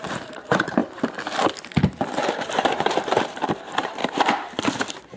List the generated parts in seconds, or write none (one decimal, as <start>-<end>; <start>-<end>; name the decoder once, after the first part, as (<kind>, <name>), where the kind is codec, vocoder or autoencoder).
0.0-0.8 (vocoder, BigVGAN v2); 2.1-5.2